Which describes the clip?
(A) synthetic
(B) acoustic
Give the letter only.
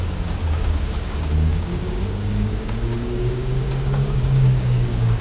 A